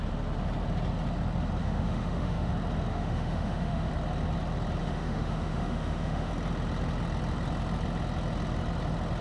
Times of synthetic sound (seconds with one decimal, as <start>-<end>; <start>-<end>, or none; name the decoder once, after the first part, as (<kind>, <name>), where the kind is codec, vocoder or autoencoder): 1.6-2.5 (autoencoder, DAC-VAE); 2.9-3.9; 4.8-6.3